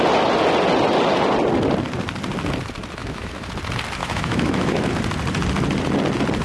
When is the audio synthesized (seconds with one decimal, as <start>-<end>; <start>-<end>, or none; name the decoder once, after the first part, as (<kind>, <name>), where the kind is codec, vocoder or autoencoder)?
3.0-3.5 (autoencoder, DAC-VAE); 4.0-4.9